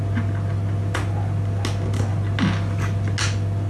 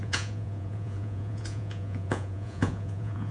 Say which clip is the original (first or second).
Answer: first